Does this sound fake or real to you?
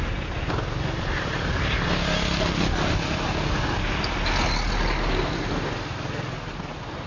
real